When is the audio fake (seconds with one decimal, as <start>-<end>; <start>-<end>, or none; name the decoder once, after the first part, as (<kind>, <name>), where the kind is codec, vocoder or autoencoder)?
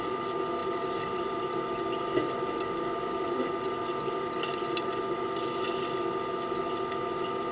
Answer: none